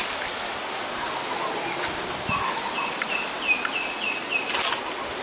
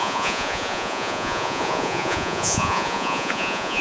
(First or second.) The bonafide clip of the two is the first